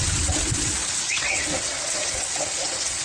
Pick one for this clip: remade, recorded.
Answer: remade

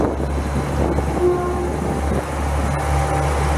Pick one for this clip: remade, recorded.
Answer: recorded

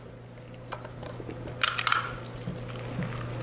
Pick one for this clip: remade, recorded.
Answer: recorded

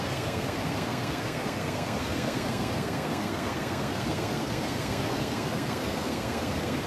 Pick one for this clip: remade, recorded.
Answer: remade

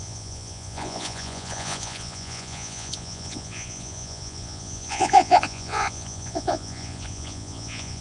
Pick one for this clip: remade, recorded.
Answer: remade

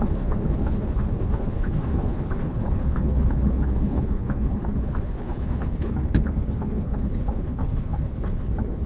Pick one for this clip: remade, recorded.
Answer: remade